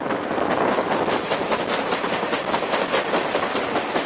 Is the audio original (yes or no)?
yes